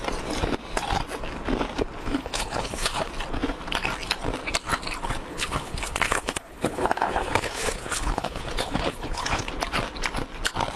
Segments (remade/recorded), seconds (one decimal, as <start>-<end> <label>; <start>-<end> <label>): 0.0-2.0 recorded; 2.0-3.1 remade; 3.1-5.3 recorded; 5.3-9.5 remade; 9.5-10.8 recorded

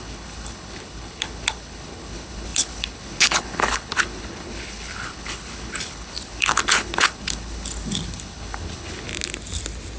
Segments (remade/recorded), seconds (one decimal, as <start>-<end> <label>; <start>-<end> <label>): 0.0-9.1 remade; 9.1-10.0 recorded

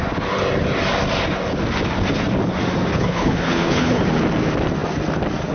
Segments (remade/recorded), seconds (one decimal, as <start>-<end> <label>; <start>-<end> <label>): 0.0-2.9 recorded; 2.9-4.0 remade; 4.0-5.5 recorded

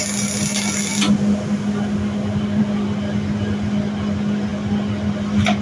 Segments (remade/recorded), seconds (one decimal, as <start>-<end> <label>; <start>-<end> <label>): 0.0-5.6 recorded

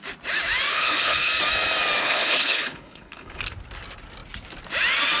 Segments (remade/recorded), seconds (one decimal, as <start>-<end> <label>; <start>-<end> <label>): 0.0-0.7 recorded; 0.7-1.3 remade; 1.3-2.0 recorded; 2.0-3.4 remade; 3.4-5.2 recorded

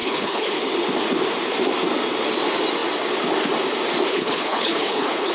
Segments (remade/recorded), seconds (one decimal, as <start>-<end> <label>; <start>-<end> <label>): 0.0-0.6 remade; 0.6-4.1 recorded; 4.1-5.3 remade

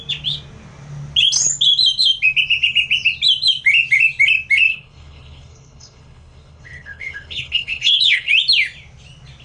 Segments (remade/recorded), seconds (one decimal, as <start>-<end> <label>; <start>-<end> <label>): 0.0-4.7 recorded; 4.7-8.3 remade; 8.3-9.4 recorded

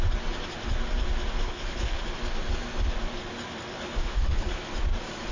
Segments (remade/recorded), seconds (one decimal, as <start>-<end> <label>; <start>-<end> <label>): 0.0-1.4 recorded; 1.4-2.0 remade; 2.0-3.7 recorded; 3.7-4.6 remade; 4.6-5.3 recorded